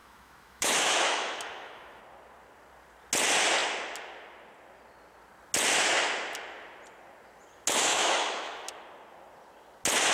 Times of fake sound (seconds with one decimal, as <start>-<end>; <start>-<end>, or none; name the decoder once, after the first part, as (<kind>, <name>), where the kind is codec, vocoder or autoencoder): 0.0-2.0 (autoencoder, DAC-VAE); 7.9-8.7